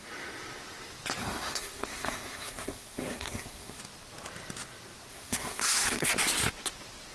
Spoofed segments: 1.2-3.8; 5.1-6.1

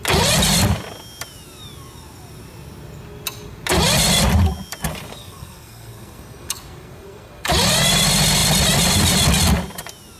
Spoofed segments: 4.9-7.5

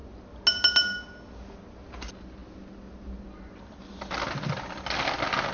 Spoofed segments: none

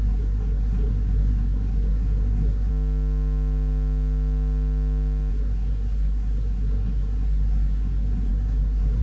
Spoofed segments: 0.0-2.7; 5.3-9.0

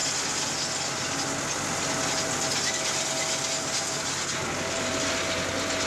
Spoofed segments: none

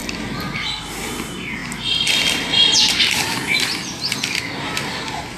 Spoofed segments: none